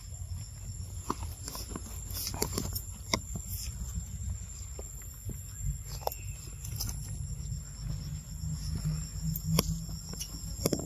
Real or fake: real